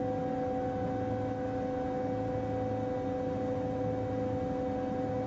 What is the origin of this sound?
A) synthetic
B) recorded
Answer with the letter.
B